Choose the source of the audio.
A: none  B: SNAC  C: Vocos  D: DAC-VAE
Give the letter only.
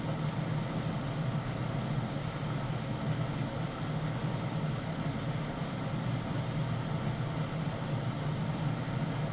A